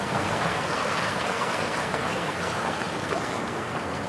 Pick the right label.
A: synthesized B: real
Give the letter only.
A